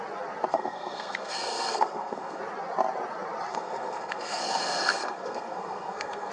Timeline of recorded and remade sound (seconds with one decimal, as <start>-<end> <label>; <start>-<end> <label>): 0.0-0.5 recorded; 0.5-2.4 remade; 2.4-3.5 recorded; 3.5-6.3 remade